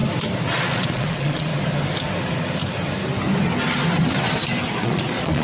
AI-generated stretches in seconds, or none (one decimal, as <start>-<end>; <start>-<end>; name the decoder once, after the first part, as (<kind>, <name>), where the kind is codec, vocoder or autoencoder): 0.6-1.5 (vocoder, Vocos); 4.7-5.4